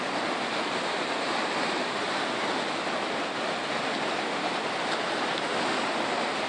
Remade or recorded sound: recorded